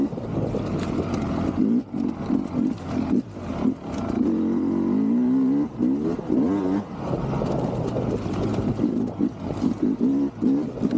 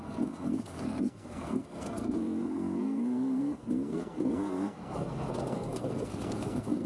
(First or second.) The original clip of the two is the first